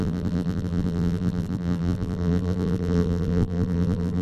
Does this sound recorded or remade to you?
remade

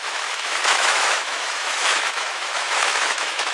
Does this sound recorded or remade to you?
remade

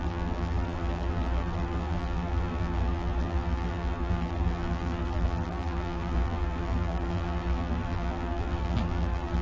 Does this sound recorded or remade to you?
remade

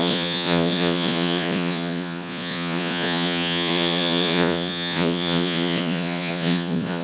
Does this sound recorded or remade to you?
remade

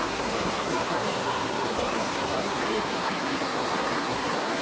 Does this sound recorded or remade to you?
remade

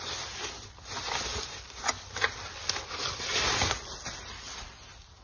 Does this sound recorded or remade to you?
recorded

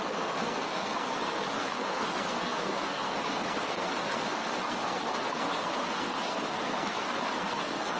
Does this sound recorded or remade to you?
remade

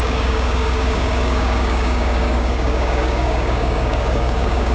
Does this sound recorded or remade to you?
remade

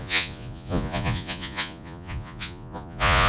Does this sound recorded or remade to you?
remade